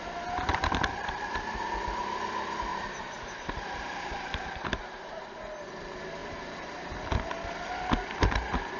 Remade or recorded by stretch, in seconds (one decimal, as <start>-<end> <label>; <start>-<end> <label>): 0.0-0.5 recorded; 0.5-1.7 remade; 1.7-2.7 recorded; 2.7-5.2 remade; 5.2-6.2 recorded; 6.2-6.7 remade; 6.7-8.8 recorded